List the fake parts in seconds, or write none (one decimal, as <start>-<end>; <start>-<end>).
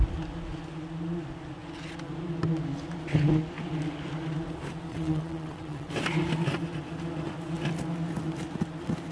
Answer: 4.9-5.9